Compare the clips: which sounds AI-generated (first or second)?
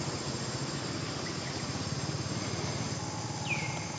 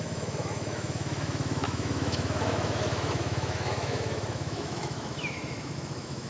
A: second